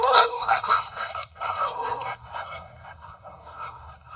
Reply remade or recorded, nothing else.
remade